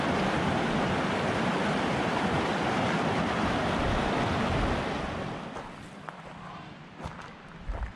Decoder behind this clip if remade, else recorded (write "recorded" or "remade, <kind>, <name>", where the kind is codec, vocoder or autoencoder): recorded